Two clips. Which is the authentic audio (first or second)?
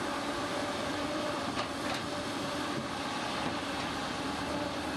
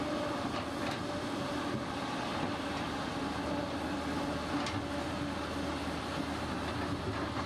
second